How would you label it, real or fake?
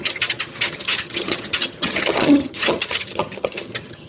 fake